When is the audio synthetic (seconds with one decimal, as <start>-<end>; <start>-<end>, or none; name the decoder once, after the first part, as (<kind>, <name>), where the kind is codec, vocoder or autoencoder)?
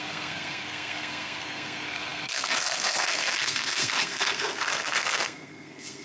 0.0-6.0 (codec, SNAC)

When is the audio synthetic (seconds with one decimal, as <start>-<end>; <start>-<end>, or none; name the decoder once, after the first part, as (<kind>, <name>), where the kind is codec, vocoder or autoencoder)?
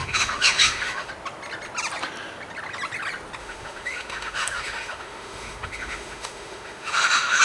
0.0-1.1 (autoencoder, DAC-VAE); 3.4-7.4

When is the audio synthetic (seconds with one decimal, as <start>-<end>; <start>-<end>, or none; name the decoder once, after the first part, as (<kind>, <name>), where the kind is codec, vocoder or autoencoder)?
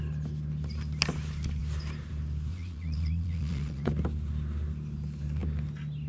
2.5-3.9 (vocoder, Vocos)